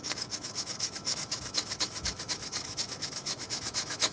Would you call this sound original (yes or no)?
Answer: no